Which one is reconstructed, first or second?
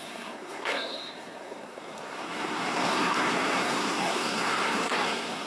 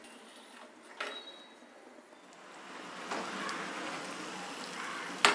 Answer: first